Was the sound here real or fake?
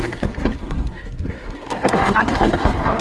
fake